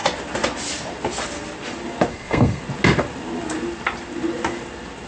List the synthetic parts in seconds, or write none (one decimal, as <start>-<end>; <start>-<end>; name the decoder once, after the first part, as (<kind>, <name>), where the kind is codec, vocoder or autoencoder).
2.1-2.6 (codec, SNAC)